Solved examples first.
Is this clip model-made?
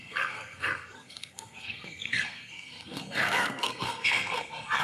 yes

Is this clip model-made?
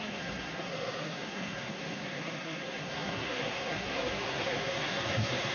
yes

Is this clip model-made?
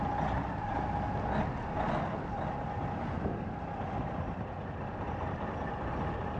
no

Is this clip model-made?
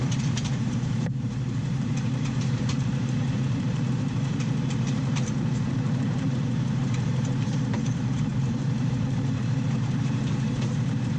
yes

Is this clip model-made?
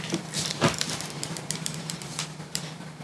yes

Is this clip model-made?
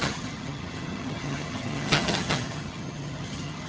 yes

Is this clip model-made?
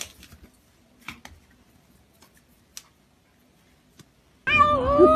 no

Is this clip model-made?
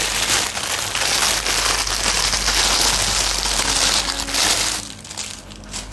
no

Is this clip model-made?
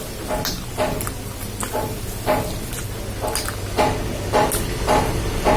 no